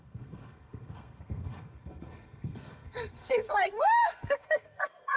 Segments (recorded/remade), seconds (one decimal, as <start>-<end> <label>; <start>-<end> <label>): 0.0-5.2 remade